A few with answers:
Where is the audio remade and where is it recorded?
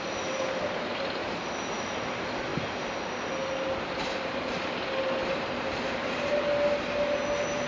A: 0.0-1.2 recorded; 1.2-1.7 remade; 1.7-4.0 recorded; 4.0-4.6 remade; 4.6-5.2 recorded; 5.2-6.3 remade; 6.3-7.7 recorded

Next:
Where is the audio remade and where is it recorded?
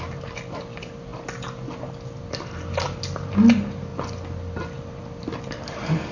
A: 0.0-6.1 recorded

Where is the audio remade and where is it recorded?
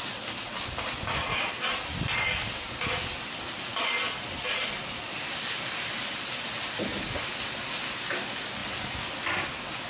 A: 0.0-9.9 recorded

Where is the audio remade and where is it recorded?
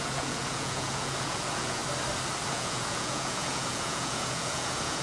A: 0.0-1.8 remade; 1.8-2.5 recorded; 2.5-5.0 remade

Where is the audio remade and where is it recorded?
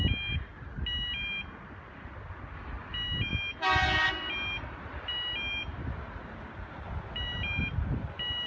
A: 0.0-8.5 recorded